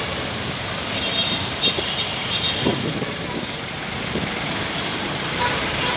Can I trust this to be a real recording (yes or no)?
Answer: no